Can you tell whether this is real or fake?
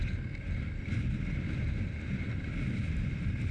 real